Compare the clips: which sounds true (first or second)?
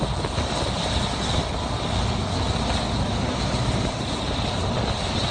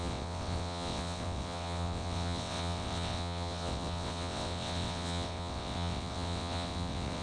first